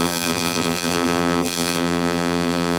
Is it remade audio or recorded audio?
remade